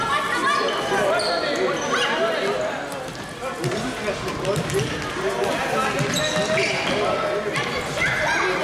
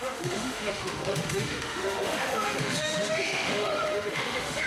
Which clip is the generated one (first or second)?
second